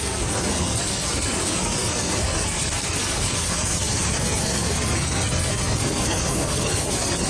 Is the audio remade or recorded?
remade